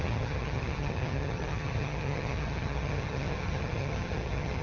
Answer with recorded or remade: remade